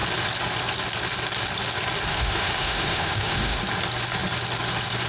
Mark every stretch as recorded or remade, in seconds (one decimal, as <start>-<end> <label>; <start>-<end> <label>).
0.0-2.1 recorded; 2.1-3.6 remade; 3.6-5.1 recorded